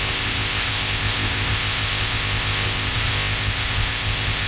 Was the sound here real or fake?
fake